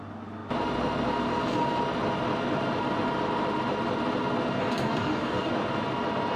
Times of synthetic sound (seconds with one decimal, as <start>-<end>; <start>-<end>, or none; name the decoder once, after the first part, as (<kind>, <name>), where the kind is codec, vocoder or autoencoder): 4.6-5.5 (codec, DAC)